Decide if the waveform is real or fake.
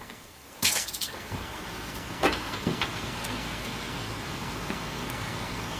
fake